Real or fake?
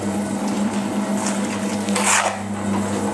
real